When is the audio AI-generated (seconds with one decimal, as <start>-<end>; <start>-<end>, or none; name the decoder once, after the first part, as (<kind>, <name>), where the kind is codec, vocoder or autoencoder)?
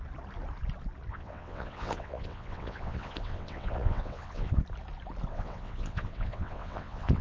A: 1.1-4.6 (vocoder, WaveNeXt); 5.3-7.2